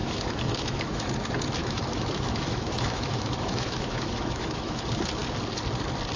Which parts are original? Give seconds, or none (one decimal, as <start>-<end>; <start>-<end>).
1.1-1.6; 4.8-6.2